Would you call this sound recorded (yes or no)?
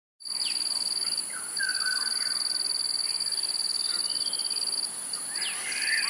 yes